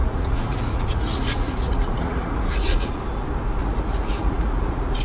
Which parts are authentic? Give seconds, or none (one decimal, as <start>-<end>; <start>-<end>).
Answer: 3.0-3.6